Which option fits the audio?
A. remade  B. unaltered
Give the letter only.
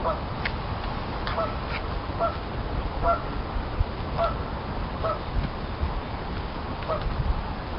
B